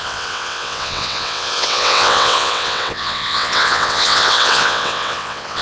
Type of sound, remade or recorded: remade